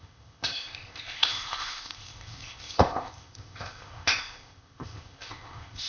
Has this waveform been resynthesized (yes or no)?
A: yes